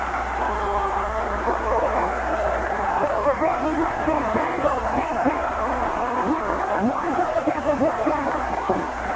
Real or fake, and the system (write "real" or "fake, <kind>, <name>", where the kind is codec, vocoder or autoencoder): fake, codec, SNAC